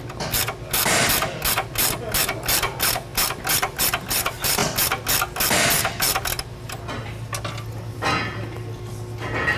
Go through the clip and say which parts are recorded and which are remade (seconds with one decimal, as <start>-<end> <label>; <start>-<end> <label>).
0.0-3.1 recorded; 3.1-3.8 remade; 3.8-9.6 recorded